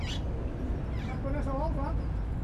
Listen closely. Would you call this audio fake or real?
real